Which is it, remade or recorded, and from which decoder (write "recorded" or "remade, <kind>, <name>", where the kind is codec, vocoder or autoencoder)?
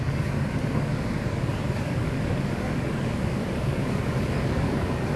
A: remade, codec, DAC